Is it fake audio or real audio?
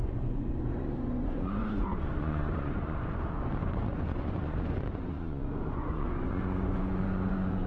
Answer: fake